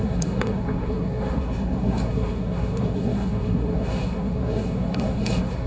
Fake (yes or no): yes